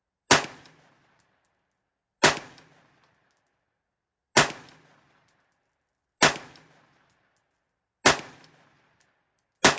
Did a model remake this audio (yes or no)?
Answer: no